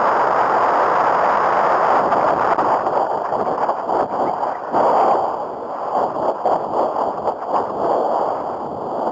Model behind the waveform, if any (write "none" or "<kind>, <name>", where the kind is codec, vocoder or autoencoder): none